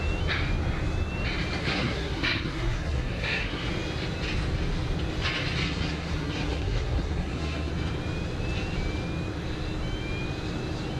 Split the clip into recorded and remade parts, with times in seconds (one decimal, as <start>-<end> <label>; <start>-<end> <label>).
0.0-1.6 recorded; 1.6-3.7 remade; 3.7-5.6 recorded; 5.6-7.7 remade; 7.7-11.0 recorded